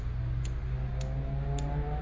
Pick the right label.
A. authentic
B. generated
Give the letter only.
A